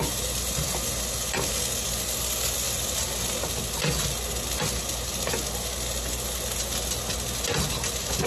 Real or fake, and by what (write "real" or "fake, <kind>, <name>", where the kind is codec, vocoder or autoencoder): real